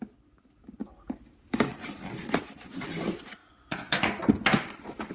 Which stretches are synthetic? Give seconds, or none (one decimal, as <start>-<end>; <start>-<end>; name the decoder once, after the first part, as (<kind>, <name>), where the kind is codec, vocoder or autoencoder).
3.4-4.2 (vocoder, Vocos)